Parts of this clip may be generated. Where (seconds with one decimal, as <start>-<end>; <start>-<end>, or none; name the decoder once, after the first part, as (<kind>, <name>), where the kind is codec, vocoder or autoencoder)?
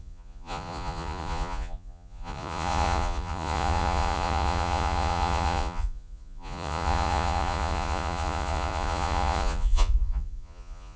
0.0-11.0 (vocoder, Vocos)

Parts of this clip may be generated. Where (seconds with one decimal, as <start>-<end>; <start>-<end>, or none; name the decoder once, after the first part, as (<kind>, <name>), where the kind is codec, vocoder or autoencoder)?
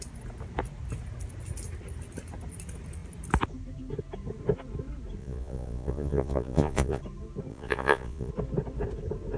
5.2-7.0 (vocoder, Vocos); 7.5-8.3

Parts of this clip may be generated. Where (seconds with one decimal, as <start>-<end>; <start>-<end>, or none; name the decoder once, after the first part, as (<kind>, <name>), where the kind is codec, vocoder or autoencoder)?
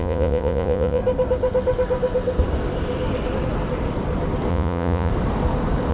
0.0-1.0 (vocoder, Vocos); 4.5-5.1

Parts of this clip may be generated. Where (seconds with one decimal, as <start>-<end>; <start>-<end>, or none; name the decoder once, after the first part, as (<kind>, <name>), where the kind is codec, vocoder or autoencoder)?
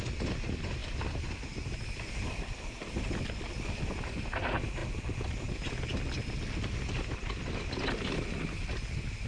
none